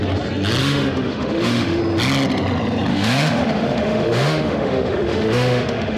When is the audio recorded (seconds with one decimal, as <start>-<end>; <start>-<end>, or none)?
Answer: 0.0-0.6; 1.8-2.9